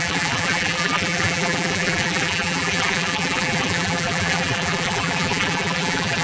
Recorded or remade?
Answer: remade